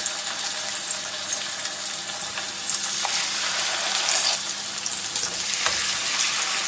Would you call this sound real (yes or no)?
yes